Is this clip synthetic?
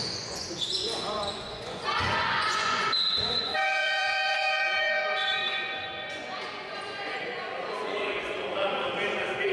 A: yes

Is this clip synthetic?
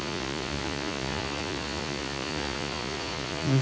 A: yes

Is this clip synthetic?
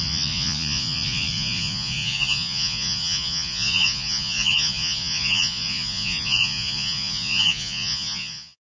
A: yes